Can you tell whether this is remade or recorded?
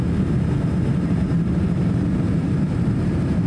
remade